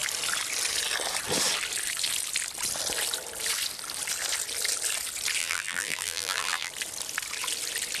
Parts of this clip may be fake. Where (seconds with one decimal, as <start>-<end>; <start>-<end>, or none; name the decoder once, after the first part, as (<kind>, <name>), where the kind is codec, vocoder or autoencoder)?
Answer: 5.4-6.7 (vocoder, BigVGAN v2)